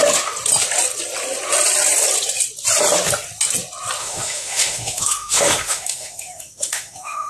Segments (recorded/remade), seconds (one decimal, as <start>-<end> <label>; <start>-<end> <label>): 0.0-4.0 recorded; 4.0-7.3 remade